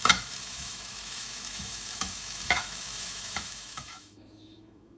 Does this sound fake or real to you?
fake